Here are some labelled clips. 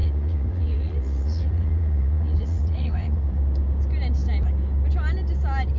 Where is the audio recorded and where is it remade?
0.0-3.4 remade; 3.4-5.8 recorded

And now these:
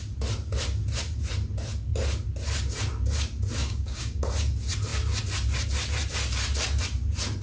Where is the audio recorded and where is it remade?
0.0-3.6 recorded; 3.6-4.2 remade; 4.2-7.4 recorded